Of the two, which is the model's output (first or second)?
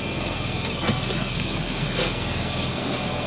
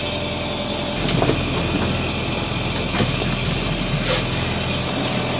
first